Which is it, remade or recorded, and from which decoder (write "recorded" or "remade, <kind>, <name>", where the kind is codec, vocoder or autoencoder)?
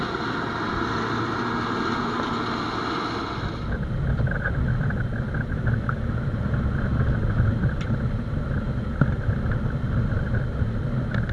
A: recorded